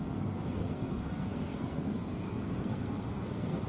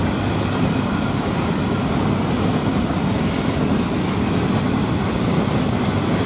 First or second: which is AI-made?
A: first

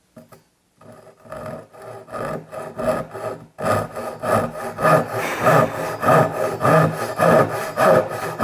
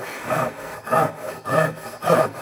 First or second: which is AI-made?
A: second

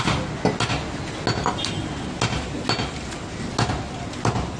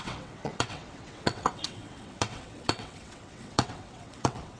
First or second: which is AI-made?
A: second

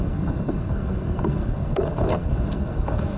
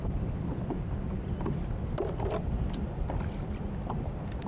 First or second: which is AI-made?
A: first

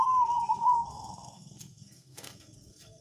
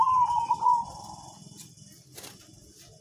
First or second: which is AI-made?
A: first